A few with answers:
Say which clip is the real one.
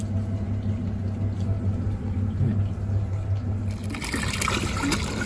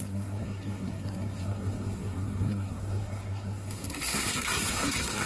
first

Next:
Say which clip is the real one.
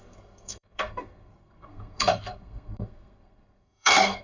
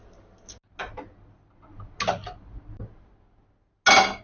second